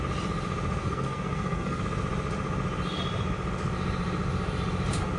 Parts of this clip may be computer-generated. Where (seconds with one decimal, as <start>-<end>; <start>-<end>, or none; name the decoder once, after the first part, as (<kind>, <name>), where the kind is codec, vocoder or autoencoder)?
0.8-1.8 (codec, SNAC)